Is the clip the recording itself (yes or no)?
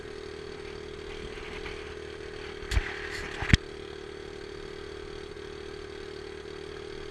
yes